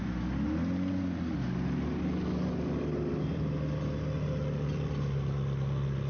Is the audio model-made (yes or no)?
no